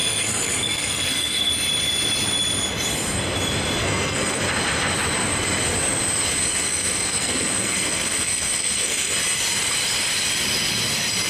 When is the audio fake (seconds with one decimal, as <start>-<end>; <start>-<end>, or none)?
0.0-1.5; 3.8-4.4; 6.4-9.1